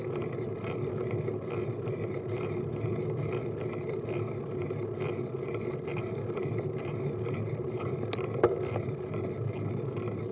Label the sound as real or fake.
real